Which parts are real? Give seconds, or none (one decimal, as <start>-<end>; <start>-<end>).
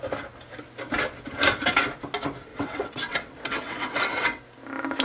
0.0-2.5; 4.4-5.0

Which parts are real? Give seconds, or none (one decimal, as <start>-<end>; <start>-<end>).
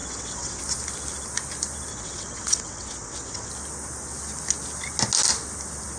0.6-1.9; 3.5-6.0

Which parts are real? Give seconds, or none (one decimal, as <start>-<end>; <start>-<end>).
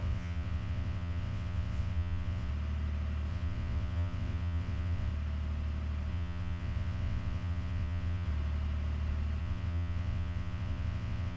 2.5-3.3; 5.1-6.1; 8.3-9.4